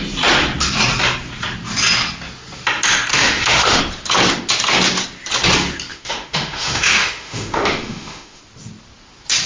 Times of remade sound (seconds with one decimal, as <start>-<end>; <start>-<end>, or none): 3.1-3.8; 5.9-8.4